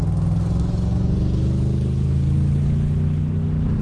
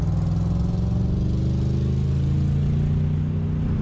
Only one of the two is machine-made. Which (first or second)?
first